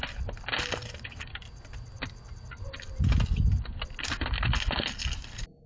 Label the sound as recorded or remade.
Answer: recorded